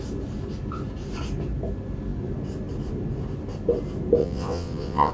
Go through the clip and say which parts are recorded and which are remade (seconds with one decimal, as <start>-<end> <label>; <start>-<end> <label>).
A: 0.0-4.2 recorded; 4.2-5.1 remade